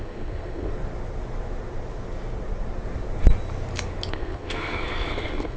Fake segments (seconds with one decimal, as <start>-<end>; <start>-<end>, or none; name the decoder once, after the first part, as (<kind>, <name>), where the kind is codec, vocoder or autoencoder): 0.0-0.7 (codec, SNAC); 4.1-5.6